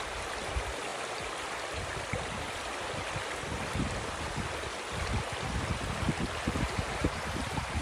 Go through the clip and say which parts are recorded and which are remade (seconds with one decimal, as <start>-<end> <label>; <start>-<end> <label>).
0.0-0.9 recorded; 0.9-4.0 remade; 4.0-7.0 recorded; 7.0-7.8 remade